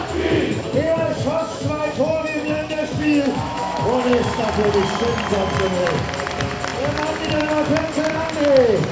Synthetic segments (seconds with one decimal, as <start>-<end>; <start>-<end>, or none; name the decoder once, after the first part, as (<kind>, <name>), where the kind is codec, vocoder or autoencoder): 1.3-4.5 (autoencoder, DAC-VAE)